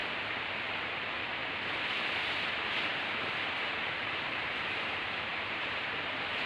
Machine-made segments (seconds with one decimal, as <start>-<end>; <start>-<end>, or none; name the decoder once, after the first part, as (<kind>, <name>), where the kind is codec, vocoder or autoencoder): 0.8-1.4 (vocoder, BigVGAN v2); 2.2-6.5